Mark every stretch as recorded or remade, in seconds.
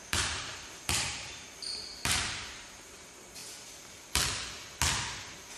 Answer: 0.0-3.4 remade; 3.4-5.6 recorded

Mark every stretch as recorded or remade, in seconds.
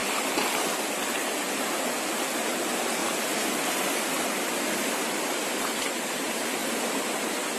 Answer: 0.0-0.8 recorded; 0.8-3.0 remade; 3.0-5.2 recorded; 5.2-6.6 remade; 6.6-7.6 recorded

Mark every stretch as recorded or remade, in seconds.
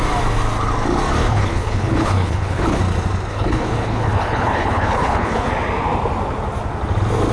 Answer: 0.0-1.2 recorded; 1.2-2.8 remade; 2.8-3.3 recorded; 3.3-5.5 remade; 5.5-7.3 recorded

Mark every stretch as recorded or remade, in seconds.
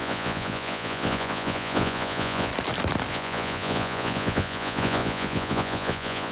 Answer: 0.0-2.5 remade; 2.5-3.1 recorded; 3.1-6.3 remade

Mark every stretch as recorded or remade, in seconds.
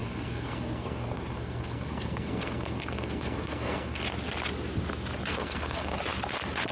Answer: 0.0-4.0 remade; 4.0-5.3 recorded; 5.3-6.0 remade; 6.0-6.7 recorded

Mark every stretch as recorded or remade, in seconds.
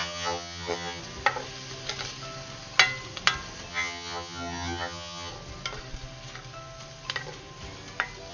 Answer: 0.0-1.0 remade; 1.0-3.7 recorded; 3.7-5.3 remade; 5.3-8.3 recorded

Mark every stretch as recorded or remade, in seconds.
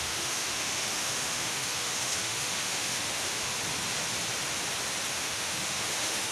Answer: 0.0-3.5 remade; 3.5-5.1 recorded; 5.1-6.3 remade